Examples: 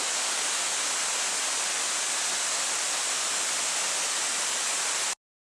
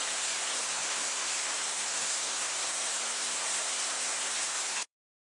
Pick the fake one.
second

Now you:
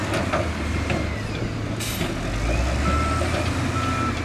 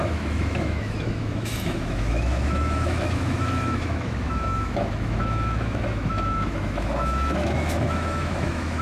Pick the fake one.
second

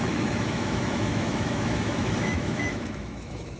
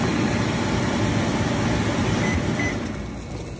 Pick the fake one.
first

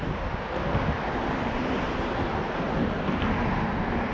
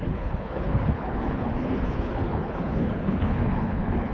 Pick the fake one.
second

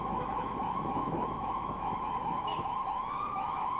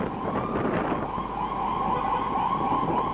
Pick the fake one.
first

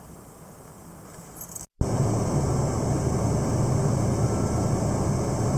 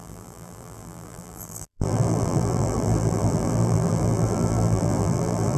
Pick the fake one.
second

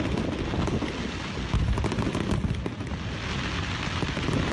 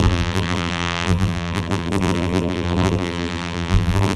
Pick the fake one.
second